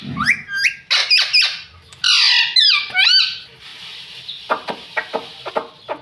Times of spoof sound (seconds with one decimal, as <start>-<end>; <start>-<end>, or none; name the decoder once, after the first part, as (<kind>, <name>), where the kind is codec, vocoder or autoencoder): none